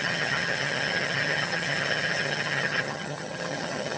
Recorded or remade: remade